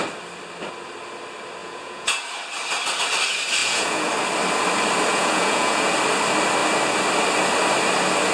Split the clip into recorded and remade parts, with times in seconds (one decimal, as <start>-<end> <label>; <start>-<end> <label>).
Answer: 0.0-1.6 recorded; 1.6-2.2 remade; 2.2-3.6 recorded; 3.6-4.1 remade; 4.1-5.1 recorded; 5.1-5.9 remade; 5.9-8.3 recorded